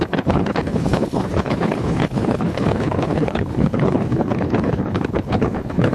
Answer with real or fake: fake